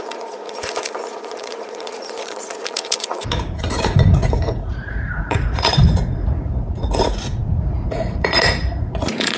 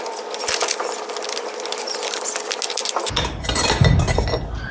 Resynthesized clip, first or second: first